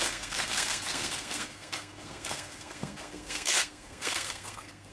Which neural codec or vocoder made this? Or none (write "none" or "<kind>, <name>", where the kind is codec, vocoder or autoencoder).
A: codec, SNAC